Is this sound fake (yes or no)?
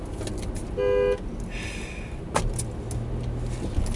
no